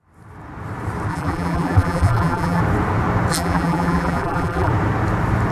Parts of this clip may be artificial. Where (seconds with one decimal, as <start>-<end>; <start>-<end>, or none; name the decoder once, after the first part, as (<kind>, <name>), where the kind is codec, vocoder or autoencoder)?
1.1-2.6 (vocoder, BigVGAN v2); 3.3-4.7